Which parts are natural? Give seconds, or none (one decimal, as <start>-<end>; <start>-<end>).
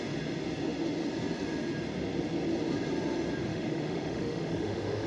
0.0-3.5